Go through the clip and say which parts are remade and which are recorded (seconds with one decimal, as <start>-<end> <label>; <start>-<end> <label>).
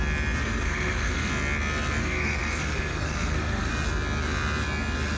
0.0-0.4 recorded; 0.4-1.3 remade; 1.3-2.0 recorded; 2.0-3.7 remade; 3.7-5.2 recorded